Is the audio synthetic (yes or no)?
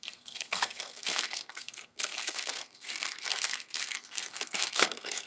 yes